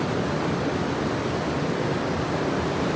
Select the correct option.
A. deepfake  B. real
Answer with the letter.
B